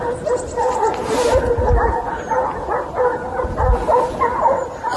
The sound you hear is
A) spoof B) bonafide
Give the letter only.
B